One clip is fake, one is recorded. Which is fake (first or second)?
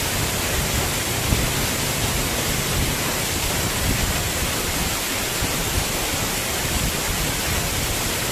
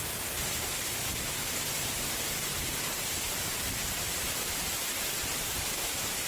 second